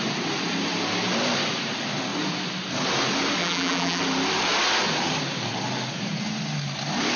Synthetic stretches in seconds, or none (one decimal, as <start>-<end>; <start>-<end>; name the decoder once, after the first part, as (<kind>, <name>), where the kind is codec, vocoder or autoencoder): 3.4-4.0 (vocoder, BigVGAN v2)